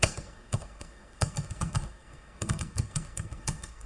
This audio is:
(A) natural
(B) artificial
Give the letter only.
B